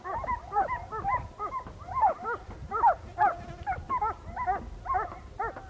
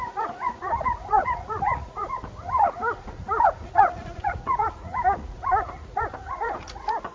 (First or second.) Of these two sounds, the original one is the first